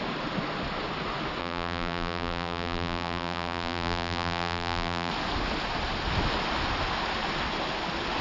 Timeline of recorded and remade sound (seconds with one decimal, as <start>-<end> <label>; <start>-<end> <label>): 0.0-1.4 recorded; 1.4-5.1 remade; 5.1-8.2 recorded